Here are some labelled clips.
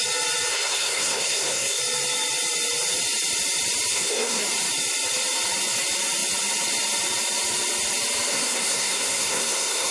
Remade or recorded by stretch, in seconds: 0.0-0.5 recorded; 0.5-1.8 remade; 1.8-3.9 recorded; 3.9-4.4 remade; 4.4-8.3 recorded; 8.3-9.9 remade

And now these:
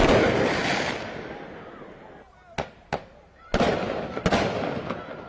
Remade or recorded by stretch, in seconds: 0.0-5.3 recorded

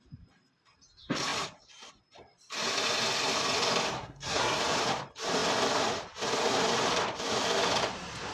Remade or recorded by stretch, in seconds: 0.0-4.0 recorded; 4.0-4.6 remade; 4.6-8.3 recorded